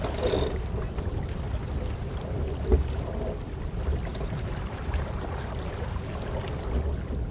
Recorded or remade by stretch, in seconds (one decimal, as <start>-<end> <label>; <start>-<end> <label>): 0.0-4.1 recorded; 4.1-6.1 remade; 6.1-7.3 recorded